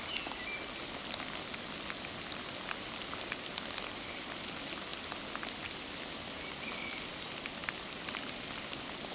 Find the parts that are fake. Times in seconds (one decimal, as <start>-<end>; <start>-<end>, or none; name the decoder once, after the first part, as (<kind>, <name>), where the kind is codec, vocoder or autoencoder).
none